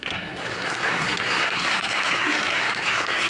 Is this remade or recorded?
remade